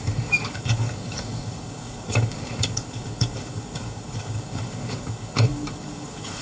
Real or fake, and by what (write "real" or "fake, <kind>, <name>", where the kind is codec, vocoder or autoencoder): fake, codec, DAC